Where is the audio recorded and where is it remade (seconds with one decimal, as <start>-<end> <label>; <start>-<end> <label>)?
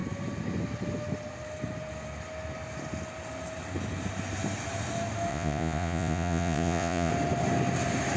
0.0-5.3 recorded; 5.3-7.1 remade; 7.1-8.2 recorded